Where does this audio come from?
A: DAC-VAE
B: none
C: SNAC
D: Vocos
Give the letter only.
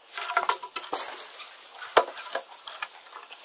B